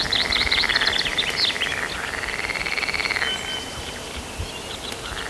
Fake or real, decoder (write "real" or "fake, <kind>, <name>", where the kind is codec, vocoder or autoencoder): real